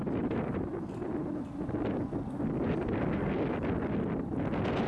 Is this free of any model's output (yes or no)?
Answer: yes